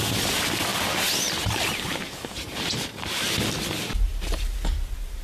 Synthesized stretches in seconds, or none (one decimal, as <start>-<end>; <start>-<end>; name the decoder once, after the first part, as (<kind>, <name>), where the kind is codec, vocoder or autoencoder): none